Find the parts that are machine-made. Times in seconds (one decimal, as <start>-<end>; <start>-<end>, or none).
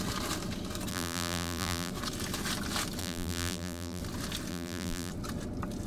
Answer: 0.9-1.9; 3.0-4.0; 4.5-5.1